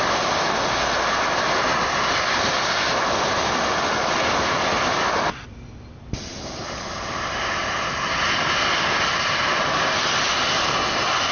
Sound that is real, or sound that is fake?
real